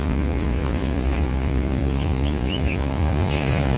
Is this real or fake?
fake